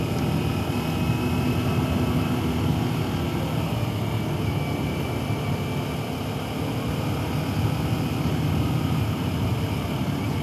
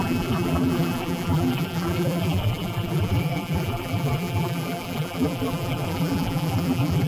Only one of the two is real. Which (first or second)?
first